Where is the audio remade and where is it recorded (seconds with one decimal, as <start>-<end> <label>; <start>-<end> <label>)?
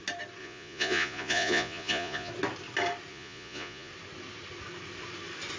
0.0-0.4 recorded; 0.4-2.3 remade; 2.3-3.1 recorded; 3.1-3.9 remade; 3.9-5.6 recorded